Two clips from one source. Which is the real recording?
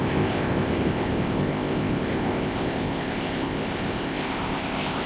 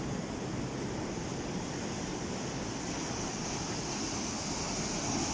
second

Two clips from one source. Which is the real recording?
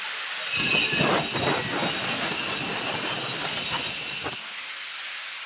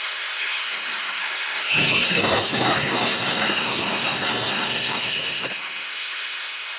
first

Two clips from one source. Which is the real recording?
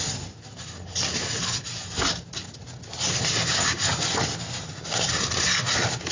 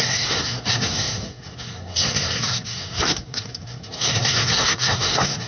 first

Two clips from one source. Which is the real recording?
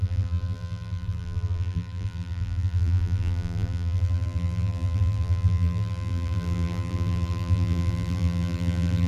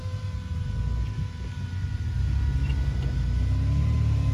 second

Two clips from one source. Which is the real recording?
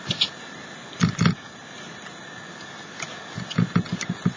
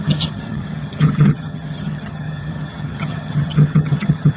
first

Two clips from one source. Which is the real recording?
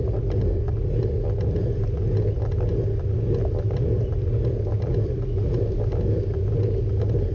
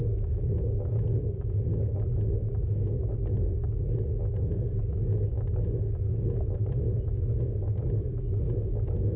first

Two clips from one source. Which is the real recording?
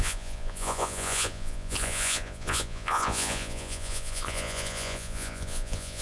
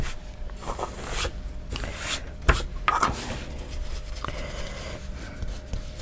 second